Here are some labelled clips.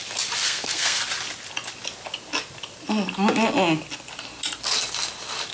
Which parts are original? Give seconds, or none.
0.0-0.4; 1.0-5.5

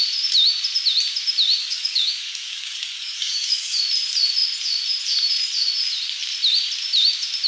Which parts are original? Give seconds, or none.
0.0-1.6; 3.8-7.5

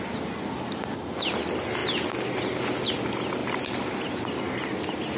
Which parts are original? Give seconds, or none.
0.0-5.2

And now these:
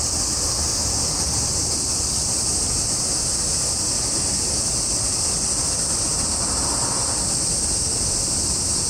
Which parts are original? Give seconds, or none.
0.7-4.8

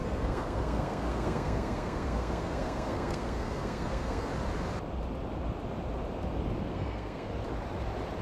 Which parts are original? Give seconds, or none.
4.3-6.7; 7.3-8.2

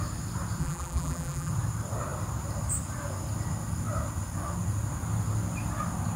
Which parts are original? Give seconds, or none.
0.0-0.6; 1.5-6.2

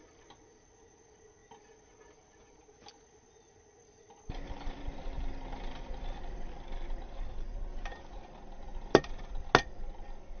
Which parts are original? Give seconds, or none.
0.0-3.8; 6.6-8.7; 9.3-10.4

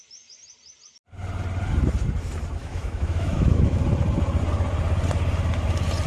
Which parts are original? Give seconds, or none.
0.0-2.6; 3.8-6.1